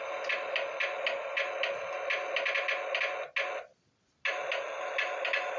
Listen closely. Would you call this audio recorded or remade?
recorded